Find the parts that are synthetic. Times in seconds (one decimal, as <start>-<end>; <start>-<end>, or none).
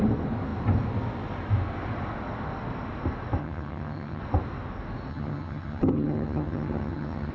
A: 3.4-4.2; 5.1-7.3